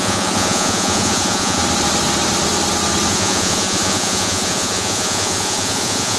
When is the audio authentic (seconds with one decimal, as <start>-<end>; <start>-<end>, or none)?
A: 1.6-3.1